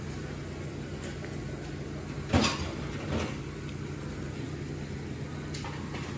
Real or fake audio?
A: real